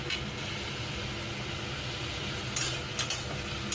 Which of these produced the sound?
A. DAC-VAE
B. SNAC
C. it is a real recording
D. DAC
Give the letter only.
C